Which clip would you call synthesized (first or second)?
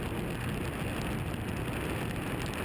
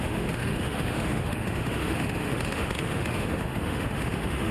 second